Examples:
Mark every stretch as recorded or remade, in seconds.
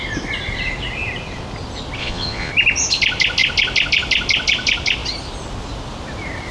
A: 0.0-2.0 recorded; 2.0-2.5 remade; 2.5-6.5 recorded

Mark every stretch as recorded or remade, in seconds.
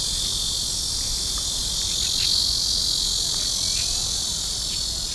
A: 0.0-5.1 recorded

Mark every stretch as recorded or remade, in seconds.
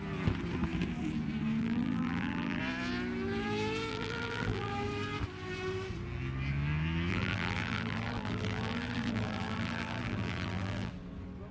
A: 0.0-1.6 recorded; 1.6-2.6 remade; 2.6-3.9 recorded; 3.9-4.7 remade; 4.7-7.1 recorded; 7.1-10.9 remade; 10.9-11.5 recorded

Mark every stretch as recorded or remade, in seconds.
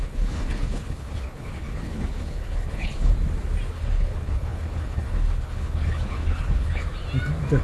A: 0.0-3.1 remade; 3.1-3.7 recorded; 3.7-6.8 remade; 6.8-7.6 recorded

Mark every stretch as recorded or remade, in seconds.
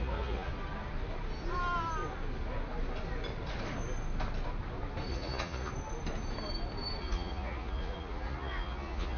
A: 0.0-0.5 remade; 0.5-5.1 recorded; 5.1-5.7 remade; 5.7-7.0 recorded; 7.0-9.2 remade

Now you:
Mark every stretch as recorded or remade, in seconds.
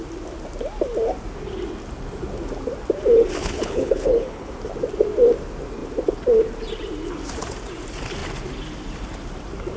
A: 0.0-3.4 recorded; 3.4-4.5 remade; 4.5-9.8 recorded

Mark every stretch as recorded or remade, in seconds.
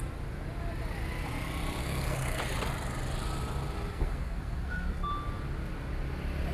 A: 0.0-1.8 recorded; 1.8-2.4 remade; 2.4-3.9 recorded; 3.9-5.1 remade; 5.1-6.5 recorded